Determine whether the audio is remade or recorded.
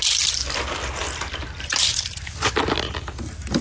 recorded